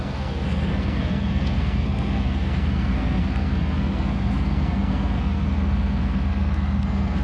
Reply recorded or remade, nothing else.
remade